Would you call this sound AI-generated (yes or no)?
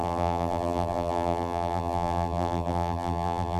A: yes